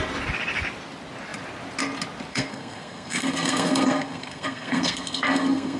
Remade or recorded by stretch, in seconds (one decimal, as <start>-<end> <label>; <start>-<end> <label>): 0.0-2.3 recorded; 2.3-5.8 remade